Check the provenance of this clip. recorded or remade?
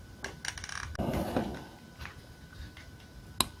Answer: recorded